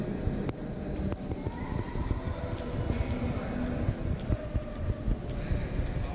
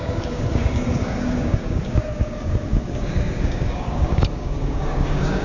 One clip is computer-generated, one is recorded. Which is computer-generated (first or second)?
second